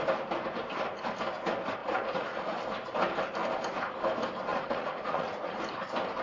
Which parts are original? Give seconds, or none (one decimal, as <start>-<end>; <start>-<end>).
0.0-1.8; 2.4-4.5; 5.6-6.2